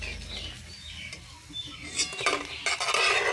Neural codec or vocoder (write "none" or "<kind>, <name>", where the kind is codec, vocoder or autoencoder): none